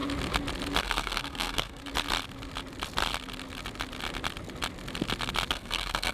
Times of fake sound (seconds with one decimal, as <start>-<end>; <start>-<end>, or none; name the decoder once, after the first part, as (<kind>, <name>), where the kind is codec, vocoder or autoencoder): 0.8-1.8 (codec, SNAC); 5.5-6.1